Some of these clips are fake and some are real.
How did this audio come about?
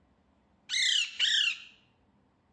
real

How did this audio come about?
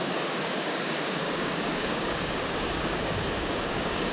fake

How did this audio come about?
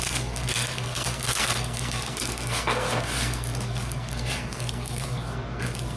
fake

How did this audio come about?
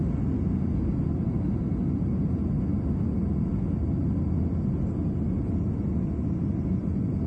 real